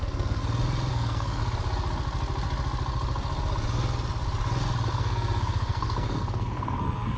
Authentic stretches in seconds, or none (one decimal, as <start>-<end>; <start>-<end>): 0.4-0.9; 1.4-4.9